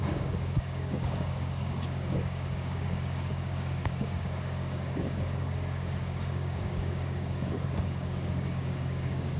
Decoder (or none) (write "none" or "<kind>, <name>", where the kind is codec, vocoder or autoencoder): codec, DAC